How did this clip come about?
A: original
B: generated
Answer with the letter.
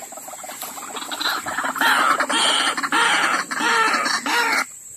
A